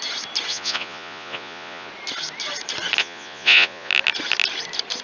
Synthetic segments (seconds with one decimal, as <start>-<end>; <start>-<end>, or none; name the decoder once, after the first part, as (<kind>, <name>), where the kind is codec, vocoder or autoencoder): 0.5-1.9 (vocoder, Vocos); 3.0-3.9